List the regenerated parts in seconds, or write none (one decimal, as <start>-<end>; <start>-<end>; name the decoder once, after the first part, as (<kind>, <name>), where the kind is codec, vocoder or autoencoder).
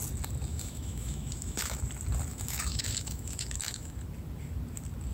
0.5-1.8 (autoencoder, DAC-VAE); 2.3-3.9